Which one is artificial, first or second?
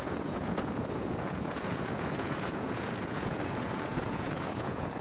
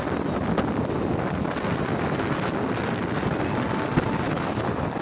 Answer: first